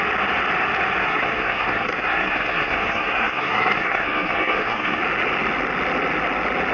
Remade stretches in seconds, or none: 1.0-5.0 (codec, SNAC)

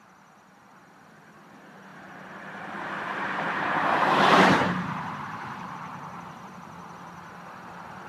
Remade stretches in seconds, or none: 1.9-6.5 (vocoder, BigVGAN v2)

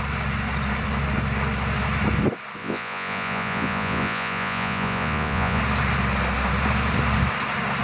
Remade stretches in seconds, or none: 2.6-5.6 (vocoder, Vocos)

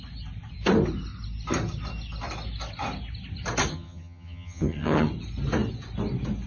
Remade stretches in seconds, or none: 3.7-5.1 (vocoder, HiFi-GAN)

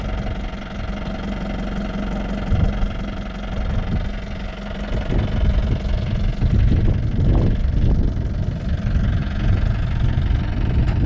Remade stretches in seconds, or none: 9.2-9.8 (vocoder, Vocos)

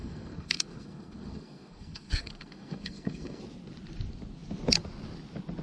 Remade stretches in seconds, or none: 0.0-3.4 (codec, SNAC)

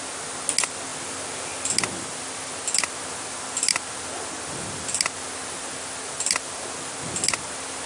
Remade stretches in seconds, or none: none